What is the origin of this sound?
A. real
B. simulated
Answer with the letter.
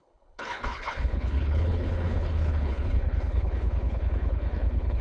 B